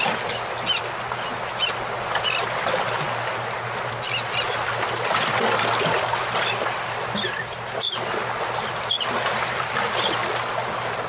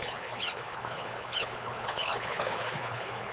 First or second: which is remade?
second